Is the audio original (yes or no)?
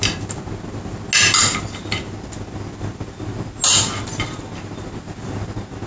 yes